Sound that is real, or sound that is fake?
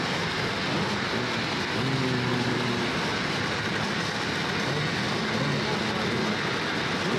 real